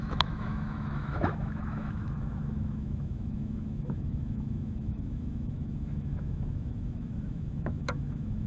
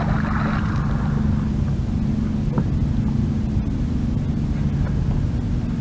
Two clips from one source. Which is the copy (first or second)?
first